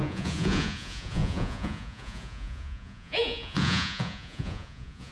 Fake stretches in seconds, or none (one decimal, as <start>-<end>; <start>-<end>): 0.0-5.1